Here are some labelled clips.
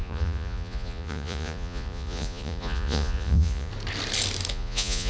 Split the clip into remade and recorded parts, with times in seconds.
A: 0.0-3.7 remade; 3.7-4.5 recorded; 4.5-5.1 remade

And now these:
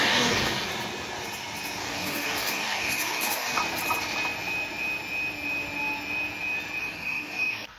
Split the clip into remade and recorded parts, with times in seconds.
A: 0.0-0.7 remade; 0.7-1.8 recorded; 1.8-3.6 remade; 3.6-6.8 recorded; 6.8-7.8 remade